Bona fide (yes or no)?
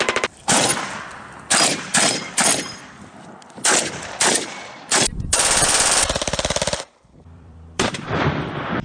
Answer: no